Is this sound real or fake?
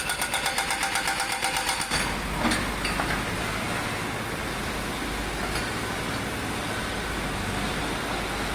real